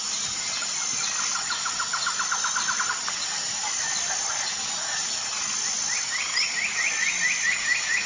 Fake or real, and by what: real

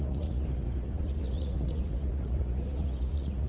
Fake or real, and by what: fake, vocoder, Vocos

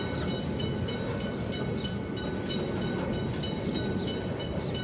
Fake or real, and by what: real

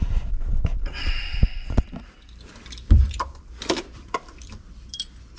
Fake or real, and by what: fake, vocoder, BigVGAN v2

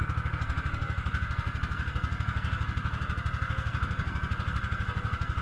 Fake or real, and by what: fake, codec, SNAC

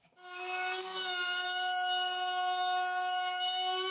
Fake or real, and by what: fake, codec, DAC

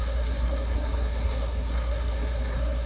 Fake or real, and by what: fake, codec, SNAC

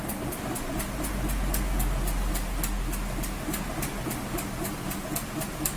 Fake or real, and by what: real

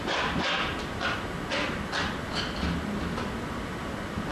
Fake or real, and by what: real